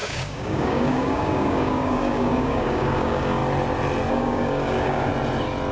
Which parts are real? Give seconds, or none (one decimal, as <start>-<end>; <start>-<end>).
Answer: 3.4-4.1; 5.1-5.7